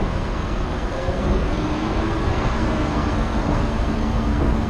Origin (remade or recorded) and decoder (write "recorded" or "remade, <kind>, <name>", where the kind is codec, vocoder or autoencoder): remade, codec, SNAC